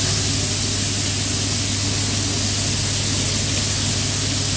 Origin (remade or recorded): recorded